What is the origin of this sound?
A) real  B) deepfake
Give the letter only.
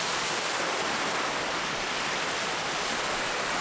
A